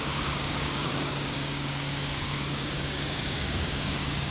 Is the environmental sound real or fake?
fake